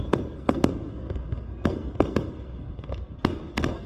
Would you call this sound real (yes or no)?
no